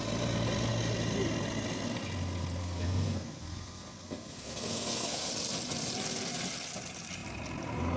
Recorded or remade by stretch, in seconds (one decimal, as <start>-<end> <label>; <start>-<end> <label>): 0.0-2.6 recorded; 2.6-5.3 remade; 5.3-8.0 recorded